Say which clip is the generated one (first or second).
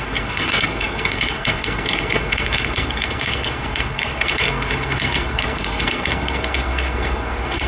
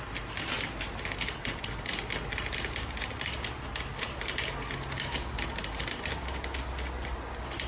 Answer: first